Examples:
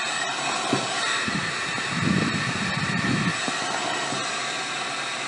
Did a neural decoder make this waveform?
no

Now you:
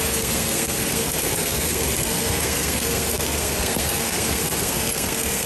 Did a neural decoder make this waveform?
yes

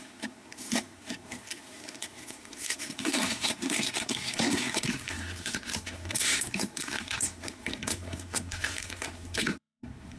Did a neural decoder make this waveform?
yes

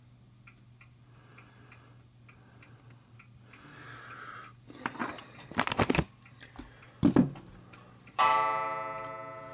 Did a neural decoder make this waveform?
no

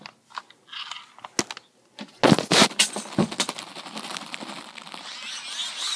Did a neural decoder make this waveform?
no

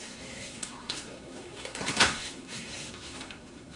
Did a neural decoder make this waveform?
yes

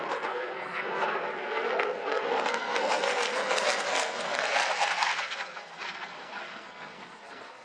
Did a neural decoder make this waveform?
yes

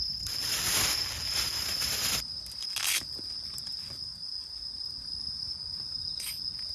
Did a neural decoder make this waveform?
no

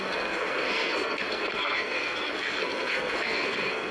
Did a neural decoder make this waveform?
yes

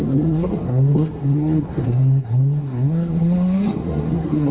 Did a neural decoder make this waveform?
yes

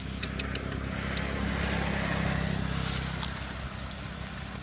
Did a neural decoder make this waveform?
no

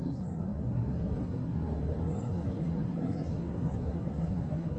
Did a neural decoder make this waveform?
yes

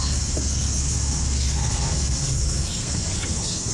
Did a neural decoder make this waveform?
yes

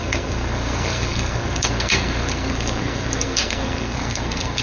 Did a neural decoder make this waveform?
yes